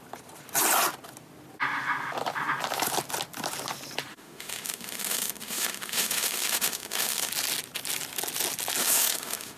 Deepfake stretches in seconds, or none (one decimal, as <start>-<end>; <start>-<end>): 4.1-7.3; 8.8-9.6